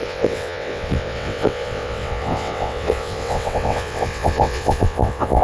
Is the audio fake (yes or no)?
yes